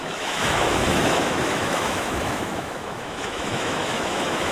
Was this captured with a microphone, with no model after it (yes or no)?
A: no